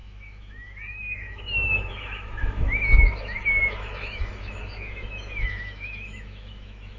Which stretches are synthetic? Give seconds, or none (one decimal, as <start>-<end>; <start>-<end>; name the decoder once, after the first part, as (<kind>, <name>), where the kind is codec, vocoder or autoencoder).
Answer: 0.0-7.0 (autoencoder, DAC-VAE)